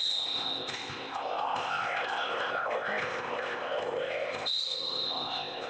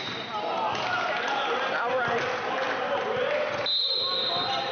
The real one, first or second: second